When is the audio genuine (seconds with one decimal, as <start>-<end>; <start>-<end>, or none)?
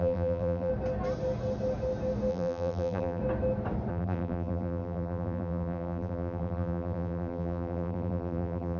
0.7-2.3; 3.2-3.9